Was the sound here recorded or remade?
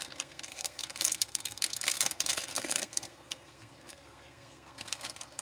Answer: remade